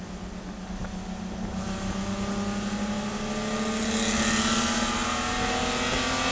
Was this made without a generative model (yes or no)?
yes